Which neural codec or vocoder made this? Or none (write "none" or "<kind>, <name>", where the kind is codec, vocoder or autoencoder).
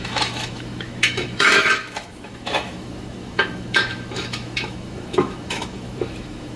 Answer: autoencoder, DAC-VAE